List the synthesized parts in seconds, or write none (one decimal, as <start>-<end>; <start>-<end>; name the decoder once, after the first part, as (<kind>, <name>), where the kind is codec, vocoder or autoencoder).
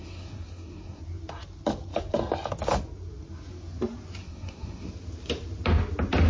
0.0-1.0 (codec, SNAC); 4.2-4.9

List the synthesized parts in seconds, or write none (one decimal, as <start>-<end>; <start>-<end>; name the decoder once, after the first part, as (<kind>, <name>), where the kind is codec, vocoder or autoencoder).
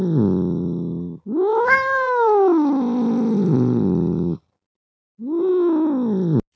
1.5-5.5 (vocoder, BigVGAN v2)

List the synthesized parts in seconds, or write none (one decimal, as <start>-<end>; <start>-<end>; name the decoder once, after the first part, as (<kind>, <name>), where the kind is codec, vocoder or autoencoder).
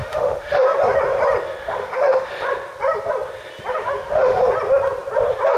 0.0-0.6 (autoencoder, DAC-VAE); 1.6-2.3; 3.7-4.4